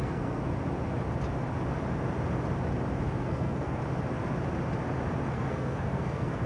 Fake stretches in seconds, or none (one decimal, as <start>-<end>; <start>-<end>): 0.0-0.4; 3.2-3.8; 5.3-6.5